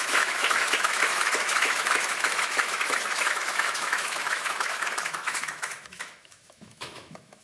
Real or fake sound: fake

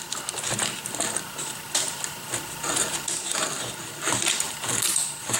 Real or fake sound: real